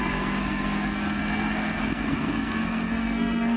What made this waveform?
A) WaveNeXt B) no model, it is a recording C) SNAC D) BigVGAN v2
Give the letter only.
C